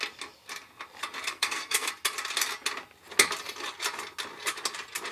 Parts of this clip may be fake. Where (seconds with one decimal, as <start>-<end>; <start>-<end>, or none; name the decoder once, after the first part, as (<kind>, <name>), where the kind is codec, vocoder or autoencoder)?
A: 1.3-1.9 (codec, SNAC)